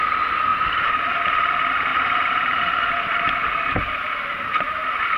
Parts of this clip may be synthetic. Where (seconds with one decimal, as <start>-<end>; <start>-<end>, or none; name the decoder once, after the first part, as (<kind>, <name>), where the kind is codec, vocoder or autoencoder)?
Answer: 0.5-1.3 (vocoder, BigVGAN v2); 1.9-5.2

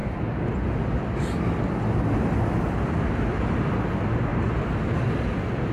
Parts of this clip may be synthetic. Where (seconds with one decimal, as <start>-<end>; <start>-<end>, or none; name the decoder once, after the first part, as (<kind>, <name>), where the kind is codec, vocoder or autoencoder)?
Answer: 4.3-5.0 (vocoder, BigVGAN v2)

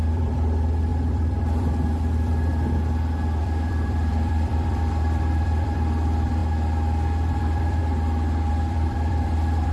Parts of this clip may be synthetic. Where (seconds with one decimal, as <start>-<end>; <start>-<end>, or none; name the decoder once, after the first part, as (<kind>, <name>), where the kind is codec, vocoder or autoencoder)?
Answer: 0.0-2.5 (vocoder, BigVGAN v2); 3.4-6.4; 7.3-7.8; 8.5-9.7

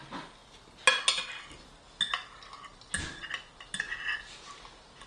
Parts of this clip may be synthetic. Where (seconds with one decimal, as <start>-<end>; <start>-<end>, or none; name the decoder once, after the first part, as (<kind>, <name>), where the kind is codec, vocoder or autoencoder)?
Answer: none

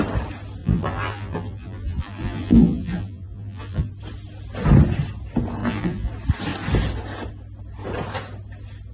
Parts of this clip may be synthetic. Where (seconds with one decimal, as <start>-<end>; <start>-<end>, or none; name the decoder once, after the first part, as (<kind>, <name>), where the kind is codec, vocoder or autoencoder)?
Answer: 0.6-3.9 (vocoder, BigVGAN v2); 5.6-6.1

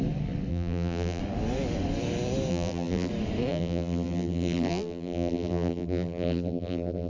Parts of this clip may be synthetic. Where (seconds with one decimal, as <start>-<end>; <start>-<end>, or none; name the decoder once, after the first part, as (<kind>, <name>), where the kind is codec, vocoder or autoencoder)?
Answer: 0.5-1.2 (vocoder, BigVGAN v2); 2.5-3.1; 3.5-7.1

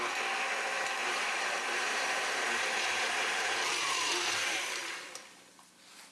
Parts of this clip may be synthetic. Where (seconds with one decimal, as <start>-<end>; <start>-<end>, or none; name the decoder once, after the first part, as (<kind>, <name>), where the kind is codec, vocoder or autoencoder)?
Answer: 1.0-4.7 (vocoder, BigVGAN v2)